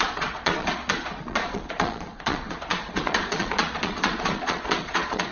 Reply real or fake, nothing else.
fake